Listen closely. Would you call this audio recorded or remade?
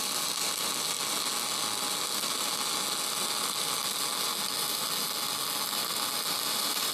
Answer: recorded